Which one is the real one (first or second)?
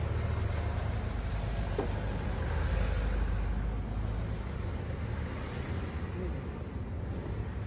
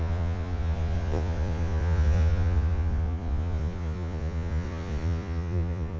first